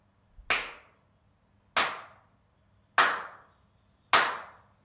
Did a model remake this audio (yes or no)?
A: no